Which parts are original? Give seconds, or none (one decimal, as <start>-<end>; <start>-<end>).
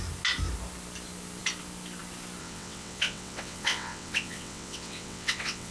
0.0-2.4